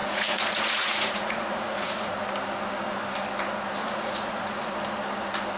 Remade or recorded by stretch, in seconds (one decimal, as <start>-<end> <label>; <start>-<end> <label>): 0.0-2.1 remade; 2.1-3.8 recorded; 3.8-4.7 remade; 4.7-5.6 recorded